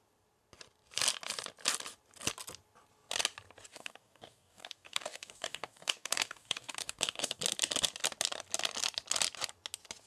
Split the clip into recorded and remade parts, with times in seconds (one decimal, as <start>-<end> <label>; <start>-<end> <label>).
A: 0.0-3.7 recorded; 3.7-7.4 remade; 7.4-10.1 recorded